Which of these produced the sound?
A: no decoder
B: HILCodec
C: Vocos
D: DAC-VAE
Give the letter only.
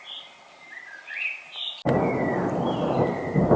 A